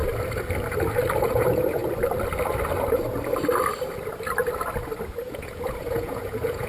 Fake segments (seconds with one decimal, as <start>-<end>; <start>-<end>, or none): 1.2-1.8; 5.2-6.7